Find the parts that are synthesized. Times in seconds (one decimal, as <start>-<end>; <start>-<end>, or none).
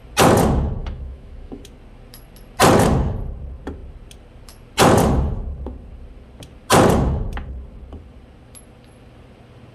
0.8-1.6